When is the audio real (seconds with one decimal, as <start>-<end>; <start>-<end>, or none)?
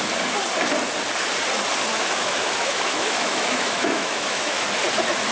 0.0-1.9; 4.6-5.3